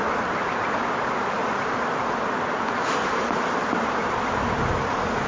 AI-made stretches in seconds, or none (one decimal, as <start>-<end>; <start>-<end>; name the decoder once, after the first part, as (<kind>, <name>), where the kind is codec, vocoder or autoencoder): 0.0-0.8 (vocoder, BigVGAN v2)